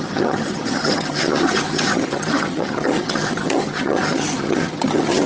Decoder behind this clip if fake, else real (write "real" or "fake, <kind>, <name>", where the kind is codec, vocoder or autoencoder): fake, vocoder, HiFi-GAN